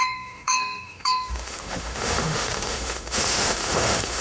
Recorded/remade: remade